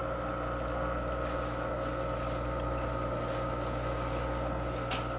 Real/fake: real